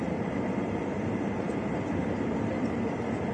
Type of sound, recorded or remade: remade